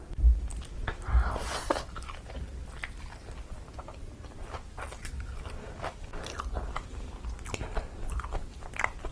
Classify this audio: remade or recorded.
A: remade